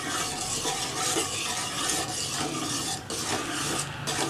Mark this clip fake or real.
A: real